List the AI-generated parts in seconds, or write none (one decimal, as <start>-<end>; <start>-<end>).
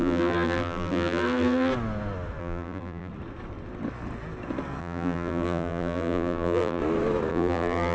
0.0-1.7; 2.4-3.1; 4.8-6.8; 7.3-7.9